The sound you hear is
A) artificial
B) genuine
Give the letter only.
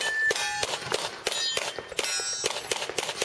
B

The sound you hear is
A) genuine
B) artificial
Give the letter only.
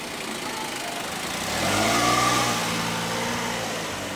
A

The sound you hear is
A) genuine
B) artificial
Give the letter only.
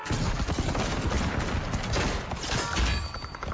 A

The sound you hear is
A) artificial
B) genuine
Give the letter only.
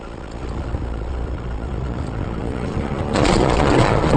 A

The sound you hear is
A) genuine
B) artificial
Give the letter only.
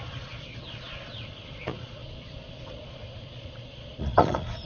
B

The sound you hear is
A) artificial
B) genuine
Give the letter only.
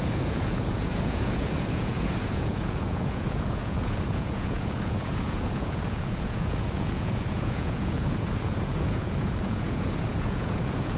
A